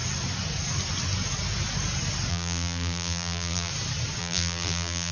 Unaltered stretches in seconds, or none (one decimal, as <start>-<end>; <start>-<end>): 0.0-2.3; 3.7-4.2